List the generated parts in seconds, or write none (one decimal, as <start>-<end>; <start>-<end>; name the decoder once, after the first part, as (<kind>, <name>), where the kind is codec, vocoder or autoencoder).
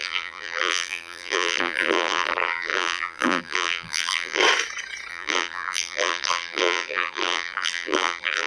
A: 0.0-4.4 (vocoder, BigVGAN v2); 5.1-8.5